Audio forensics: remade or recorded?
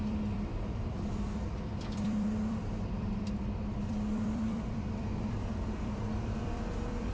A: remade